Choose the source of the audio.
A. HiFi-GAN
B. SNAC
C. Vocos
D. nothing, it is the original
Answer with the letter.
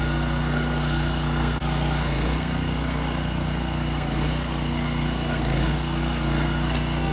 B